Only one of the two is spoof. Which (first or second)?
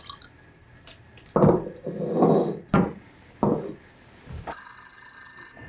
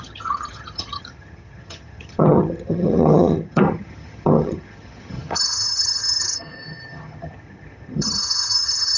second